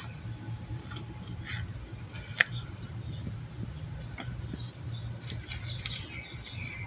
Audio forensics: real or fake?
real